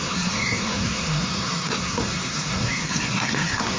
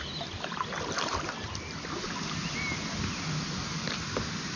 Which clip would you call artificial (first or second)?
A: first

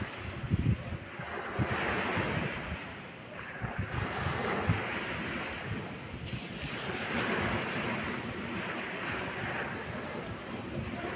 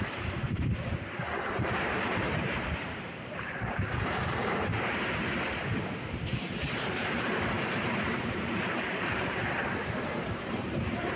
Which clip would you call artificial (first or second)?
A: second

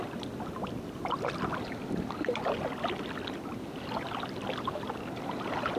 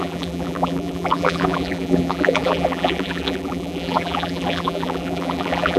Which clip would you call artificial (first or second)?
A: second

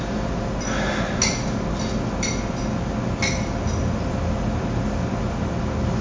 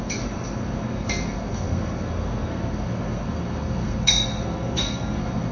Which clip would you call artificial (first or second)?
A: second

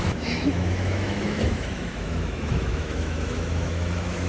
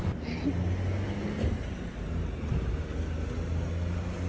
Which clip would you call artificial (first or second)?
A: first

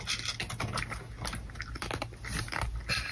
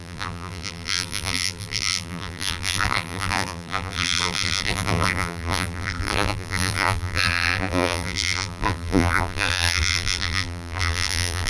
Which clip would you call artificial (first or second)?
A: second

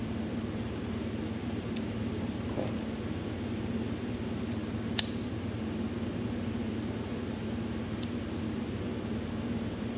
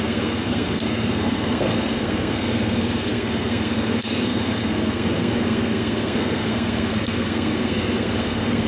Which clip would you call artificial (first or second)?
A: second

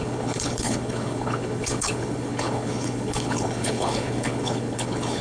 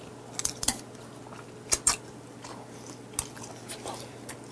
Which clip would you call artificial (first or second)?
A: first